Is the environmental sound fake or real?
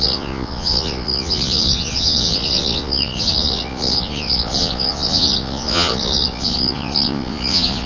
fake